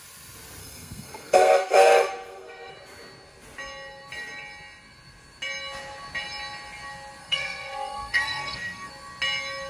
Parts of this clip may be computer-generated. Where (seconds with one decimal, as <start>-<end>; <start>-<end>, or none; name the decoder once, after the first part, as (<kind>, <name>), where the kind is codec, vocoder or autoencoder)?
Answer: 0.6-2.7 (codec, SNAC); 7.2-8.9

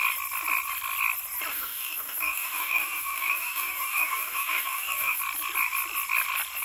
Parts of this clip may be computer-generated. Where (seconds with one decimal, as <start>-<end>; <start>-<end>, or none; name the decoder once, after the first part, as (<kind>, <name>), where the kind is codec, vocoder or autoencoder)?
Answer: 1.5-5.2 (codec, DAC)

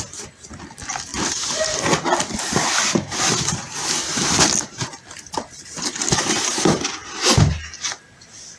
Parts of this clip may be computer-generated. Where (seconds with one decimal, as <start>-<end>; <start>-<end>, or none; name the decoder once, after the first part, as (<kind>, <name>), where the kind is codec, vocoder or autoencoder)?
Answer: 1.1-1.6 (vocoder, BigVGAN v2)

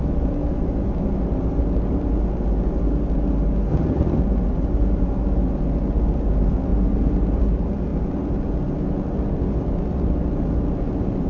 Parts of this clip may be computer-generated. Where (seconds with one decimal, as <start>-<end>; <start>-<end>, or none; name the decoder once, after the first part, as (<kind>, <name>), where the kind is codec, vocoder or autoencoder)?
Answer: 3.7-4.2 (vocoder, HiFi-GAN)